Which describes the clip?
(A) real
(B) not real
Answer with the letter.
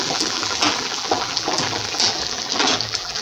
B